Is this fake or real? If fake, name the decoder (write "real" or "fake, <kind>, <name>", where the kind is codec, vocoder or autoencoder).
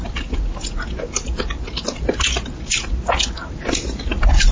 real